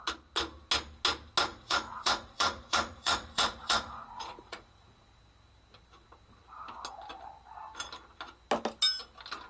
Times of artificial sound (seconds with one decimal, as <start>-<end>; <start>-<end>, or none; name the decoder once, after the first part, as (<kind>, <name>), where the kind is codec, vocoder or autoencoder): 1.5-5.2 (vocoder, Vocos)